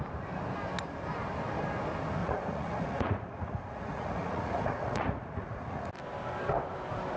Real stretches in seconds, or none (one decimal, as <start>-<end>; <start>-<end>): 0.0-2.2; 5.9-7.2